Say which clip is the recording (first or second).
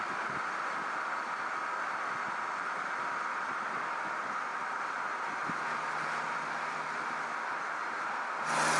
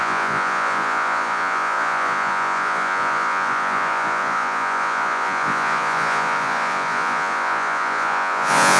first